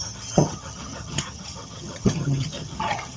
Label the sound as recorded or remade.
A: remade